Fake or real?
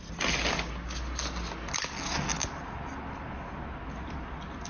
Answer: real